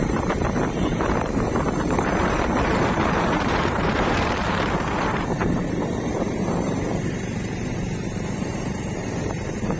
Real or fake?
fake